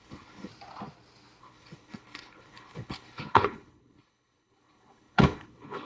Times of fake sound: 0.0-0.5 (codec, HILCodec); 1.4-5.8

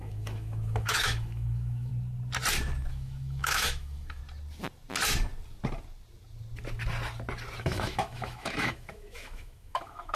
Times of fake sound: 0.0-1.9 (autoencoder, DAC-VAE); 2.9-4.2; 7.6-10.2

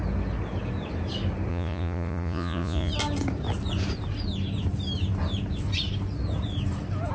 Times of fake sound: 1.5-2.9 (vocoder, Vocos)

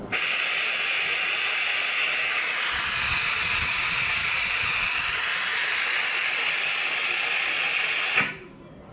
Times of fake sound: 4.2-7.4 (vocoder, BigVGAN v2)